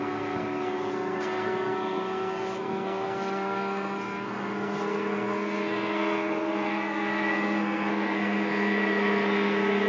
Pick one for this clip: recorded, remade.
remade